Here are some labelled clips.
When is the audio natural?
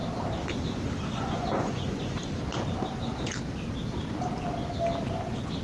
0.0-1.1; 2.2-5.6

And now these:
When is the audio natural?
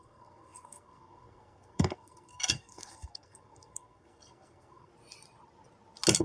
4.9-6.2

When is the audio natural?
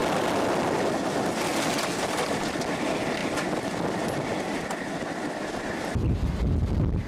0.0-7.1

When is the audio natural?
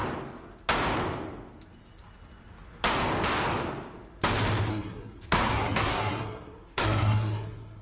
0.0-4.7